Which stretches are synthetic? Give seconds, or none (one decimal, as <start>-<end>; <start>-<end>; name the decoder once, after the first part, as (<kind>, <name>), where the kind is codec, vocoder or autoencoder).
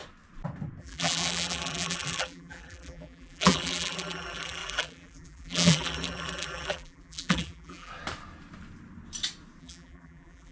0.8-7.9 (vocoder, BigVGAN v2); 9.6-10.5